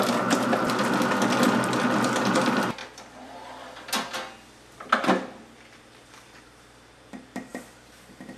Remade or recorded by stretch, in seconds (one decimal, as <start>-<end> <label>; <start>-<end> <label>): 0.0-2.8 recorded; 2.8-3.9 remade; 3.9-8.4 recorded